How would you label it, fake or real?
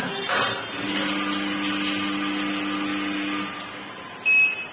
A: real